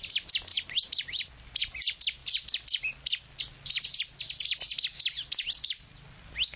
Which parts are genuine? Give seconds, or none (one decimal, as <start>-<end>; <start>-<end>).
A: 0.0-6.6